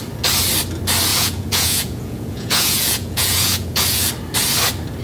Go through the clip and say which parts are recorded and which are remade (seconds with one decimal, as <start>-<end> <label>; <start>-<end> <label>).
0.0-1.1 recorded; 1.1-4.1 remade; 4.1-5.0 recorded